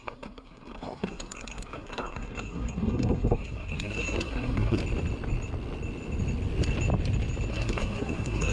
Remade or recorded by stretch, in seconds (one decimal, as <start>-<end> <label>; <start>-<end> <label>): 0.0-4.8 remade; 4.8-7.5 recorded; 7.5-8.5 remade